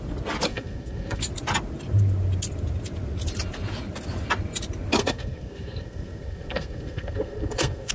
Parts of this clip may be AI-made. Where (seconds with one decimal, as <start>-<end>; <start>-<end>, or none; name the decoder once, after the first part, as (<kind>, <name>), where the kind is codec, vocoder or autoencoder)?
0.5-1.2 (codec, SNAC); 5.0-7.9